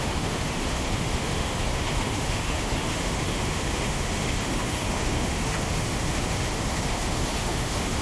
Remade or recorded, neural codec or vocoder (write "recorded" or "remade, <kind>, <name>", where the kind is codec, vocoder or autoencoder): remade, autoencoder, DAC-VAE